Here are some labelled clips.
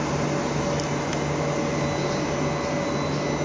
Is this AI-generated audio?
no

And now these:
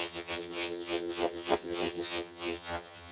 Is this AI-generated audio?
yes